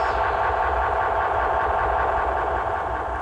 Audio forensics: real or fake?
real